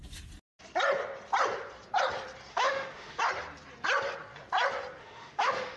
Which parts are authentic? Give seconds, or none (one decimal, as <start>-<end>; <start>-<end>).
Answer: 0.0-2.5; 3.2-5.0